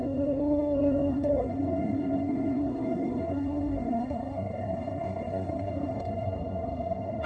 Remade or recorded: remade